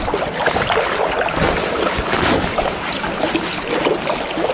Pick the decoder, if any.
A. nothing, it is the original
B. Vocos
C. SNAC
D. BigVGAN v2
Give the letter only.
A